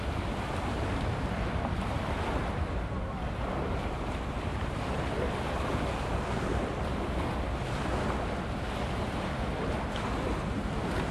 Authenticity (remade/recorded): recorded